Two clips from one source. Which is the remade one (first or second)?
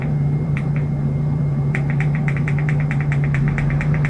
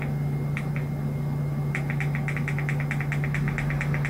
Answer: first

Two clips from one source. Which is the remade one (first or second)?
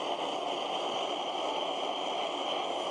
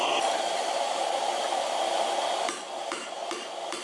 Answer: second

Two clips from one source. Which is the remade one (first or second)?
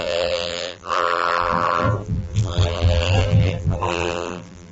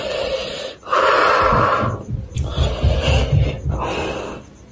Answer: first